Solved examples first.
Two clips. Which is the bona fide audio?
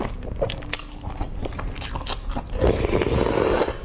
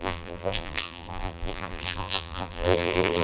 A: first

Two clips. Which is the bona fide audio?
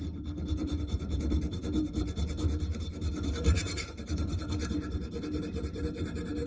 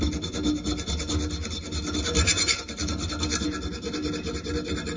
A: second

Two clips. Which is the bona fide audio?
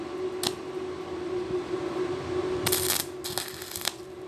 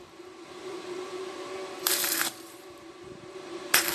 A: first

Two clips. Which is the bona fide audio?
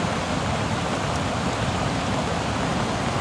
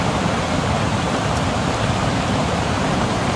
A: first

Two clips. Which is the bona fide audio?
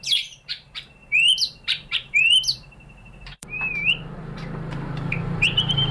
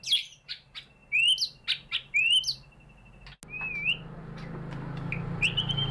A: second